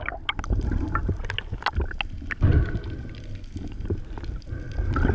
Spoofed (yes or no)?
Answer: no